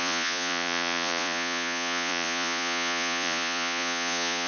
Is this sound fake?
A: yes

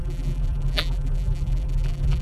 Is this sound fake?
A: yes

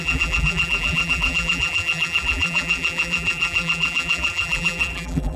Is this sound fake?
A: yes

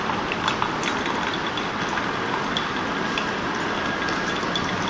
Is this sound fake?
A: no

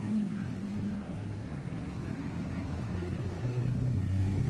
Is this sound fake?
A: yes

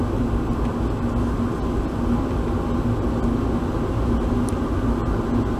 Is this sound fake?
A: no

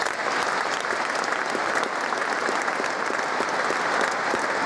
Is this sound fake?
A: no